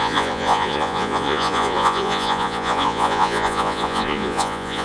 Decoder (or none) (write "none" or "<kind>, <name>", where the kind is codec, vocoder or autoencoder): vocoder, Vocos